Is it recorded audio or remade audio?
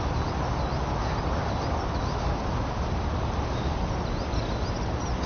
recorded